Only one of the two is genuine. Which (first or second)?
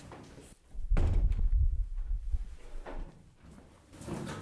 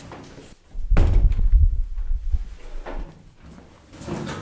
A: second